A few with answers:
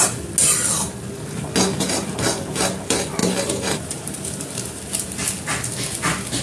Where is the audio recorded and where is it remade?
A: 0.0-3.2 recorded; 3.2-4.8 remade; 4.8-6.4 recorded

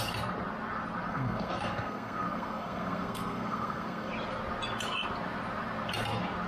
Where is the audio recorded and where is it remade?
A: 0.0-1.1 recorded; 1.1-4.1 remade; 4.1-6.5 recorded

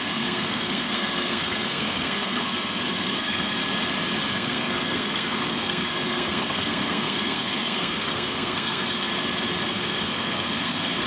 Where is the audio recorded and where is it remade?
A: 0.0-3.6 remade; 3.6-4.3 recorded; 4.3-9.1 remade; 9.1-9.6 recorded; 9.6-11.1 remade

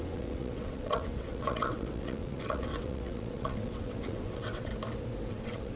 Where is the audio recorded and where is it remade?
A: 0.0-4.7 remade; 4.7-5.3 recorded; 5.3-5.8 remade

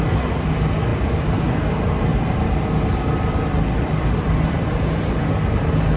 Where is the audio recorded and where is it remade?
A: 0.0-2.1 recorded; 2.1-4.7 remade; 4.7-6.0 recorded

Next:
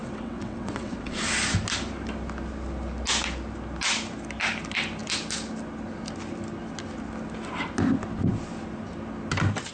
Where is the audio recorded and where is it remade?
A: 0.0-1.1 remade; 1.1-9.7 recorded

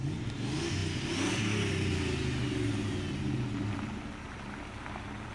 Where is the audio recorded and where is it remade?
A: 0.0-5.3 recorded

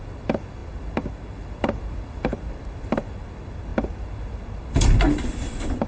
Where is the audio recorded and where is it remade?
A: 0.0-5.9 recorded